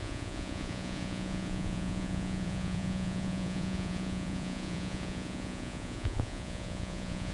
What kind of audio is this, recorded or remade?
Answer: remade